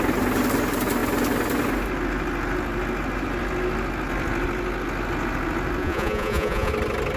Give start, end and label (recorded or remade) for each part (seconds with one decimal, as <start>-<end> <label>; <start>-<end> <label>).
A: 0.0-5.8 recorded; 5.8-6.7 remade; 6.7-7.2 recorded